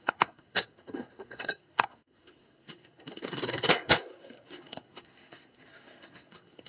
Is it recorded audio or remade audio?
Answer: remade